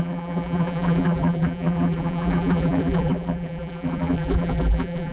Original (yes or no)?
no